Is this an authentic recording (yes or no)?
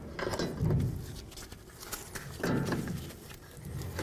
yes